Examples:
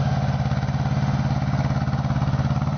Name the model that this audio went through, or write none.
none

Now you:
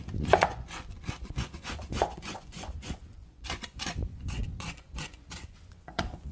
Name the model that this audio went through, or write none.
vocoder, Vocos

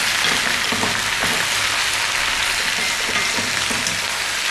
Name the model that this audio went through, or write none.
none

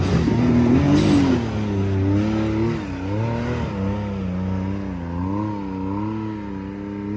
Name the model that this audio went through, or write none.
none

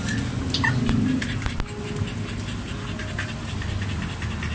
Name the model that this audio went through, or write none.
none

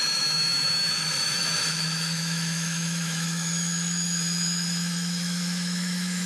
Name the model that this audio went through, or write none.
autoencoder, DAC-VAE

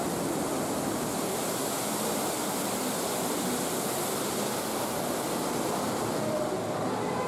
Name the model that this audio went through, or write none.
none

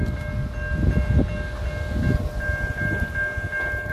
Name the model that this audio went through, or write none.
none